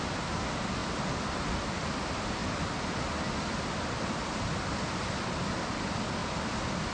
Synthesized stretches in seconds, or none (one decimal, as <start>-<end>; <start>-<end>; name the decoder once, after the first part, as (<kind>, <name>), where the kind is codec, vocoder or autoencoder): none